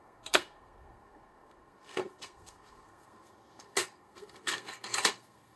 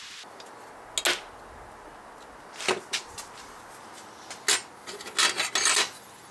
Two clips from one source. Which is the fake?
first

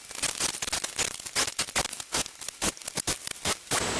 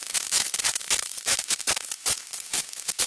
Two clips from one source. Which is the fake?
second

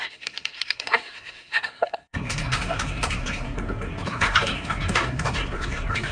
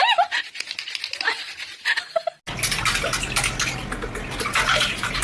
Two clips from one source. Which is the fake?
first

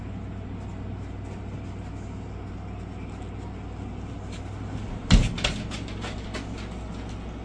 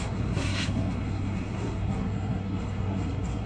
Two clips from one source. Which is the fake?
second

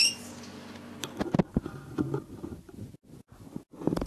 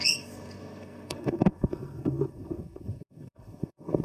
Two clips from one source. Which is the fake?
second